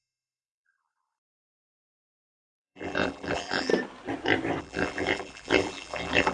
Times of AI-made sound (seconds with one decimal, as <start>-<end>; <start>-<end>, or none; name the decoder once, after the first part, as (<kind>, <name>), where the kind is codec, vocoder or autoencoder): 0.0-3.7 (vocoder, BigVGAN v2); 4.6-6.3